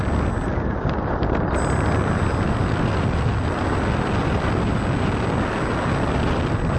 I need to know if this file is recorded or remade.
recorded